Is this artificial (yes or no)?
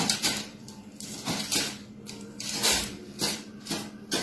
yes